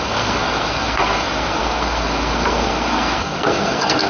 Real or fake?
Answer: fake